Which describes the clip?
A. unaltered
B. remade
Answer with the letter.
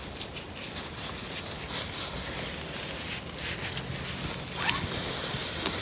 A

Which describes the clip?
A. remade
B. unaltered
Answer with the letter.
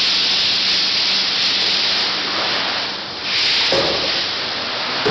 B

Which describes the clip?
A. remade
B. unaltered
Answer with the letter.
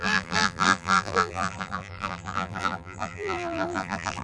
A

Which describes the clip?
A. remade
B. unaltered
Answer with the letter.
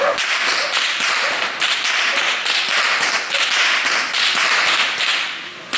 B